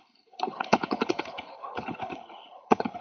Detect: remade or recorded remade